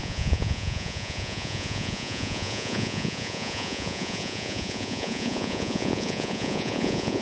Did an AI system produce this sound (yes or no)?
yes